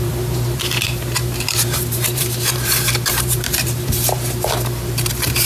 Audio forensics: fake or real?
fake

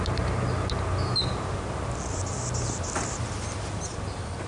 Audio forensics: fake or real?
real